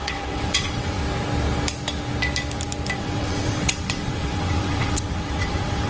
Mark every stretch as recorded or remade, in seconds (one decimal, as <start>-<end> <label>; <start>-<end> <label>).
0.0-1.0 remade; 1.0-3.0 recorded; 3.0-5.9 remade